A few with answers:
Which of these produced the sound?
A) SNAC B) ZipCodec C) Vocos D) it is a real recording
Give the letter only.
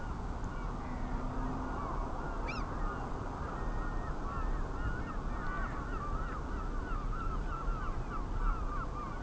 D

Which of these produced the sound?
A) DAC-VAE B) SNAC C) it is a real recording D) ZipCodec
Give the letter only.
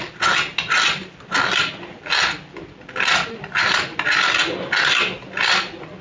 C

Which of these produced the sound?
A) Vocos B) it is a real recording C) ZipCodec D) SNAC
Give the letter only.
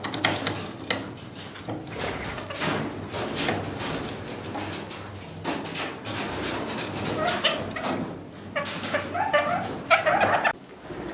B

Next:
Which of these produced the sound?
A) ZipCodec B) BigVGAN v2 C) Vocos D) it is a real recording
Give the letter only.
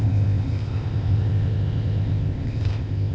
A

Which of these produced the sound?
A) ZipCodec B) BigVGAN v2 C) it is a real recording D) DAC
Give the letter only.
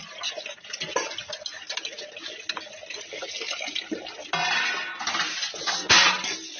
C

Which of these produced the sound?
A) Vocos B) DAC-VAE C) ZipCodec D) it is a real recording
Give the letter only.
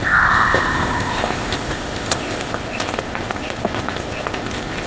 C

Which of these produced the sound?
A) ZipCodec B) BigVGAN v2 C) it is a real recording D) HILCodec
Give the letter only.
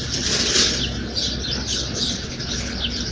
C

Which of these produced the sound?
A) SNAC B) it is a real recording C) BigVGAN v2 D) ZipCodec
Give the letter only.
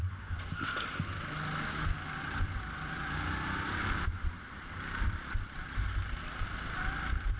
B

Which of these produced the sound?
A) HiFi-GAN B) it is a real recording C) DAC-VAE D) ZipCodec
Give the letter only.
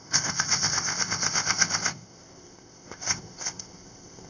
D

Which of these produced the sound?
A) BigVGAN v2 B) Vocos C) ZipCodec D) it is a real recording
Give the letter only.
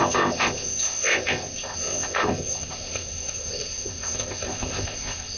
C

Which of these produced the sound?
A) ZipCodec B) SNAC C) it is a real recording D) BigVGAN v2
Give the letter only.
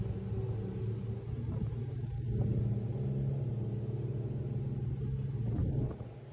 C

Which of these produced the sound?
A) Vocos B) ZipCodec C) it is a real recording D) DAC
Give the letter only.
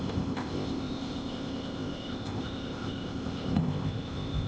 B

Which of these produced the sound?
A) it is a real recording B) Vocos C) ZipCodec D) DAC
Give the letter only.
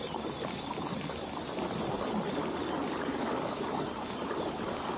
A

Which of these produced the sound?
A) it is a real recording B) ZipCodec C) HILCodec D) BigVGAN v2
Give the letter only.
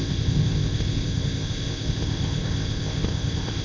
B